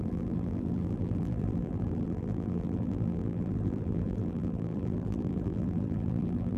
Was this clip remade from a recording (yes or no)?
yes